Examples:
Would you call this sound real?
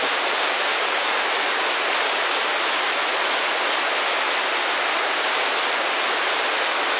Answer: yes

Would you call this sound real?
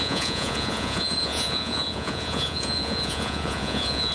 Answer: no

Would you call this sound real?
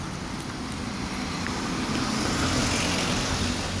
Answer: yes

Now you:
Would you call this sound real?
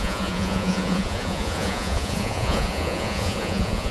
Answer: no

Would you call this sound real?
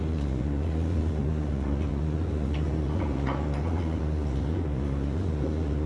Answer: no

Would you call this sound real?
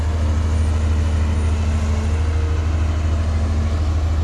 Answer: yes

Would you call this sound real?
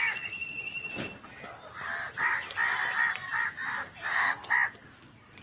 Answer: yes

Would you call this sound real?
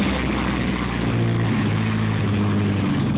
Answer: yes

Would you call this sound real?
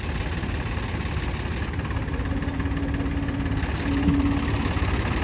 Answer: yes